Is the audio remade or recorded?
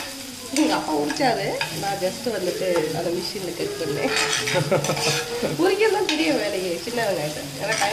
recorded